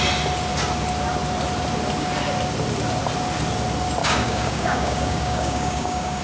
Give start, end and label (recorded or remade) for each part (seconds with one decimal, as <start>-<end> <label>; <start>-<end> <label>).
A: 0.0-4.0 recorded; 4.0-6.2 remade